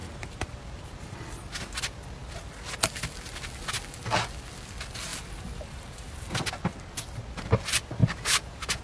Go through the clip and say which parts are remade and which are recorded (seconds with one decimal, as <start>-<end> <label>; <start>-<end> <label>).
0.0-0.8 remade; 0.8-5.1 recorded; 5.1-6.5 remade; 6.5-8.0 recorded; 8.0-8.8 remade